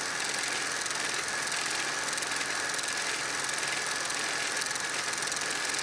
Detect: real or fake real